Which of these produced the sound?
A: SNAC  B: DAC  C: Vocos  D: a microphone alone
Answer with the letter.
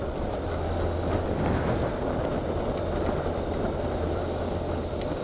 D